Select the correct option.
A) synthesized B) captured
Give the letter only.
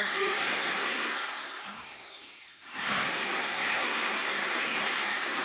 A